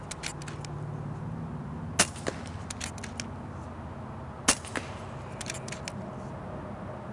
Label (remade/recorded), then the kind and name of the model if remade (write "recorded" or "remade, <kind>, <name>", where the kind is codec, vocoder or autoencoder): recorded